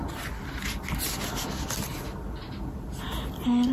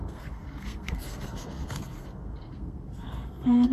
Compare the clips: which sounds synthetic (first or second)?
second